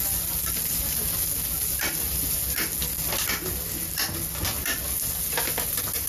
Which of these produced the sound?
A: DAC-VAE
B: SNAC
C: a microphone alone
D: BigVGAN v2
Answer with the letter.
C